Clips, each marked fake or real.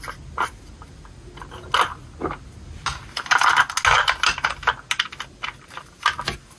real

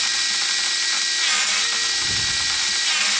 real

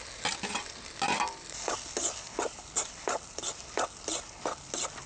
real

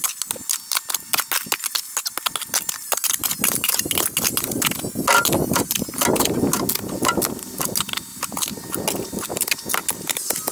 real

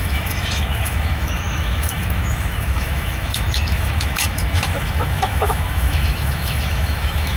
fake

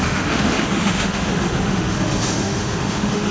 fake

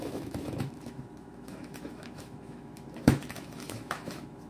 fake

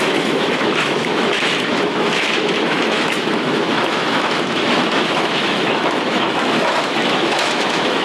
fake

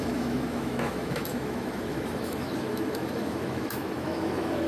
fake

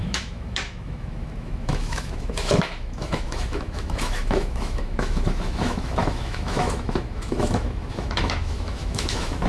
fake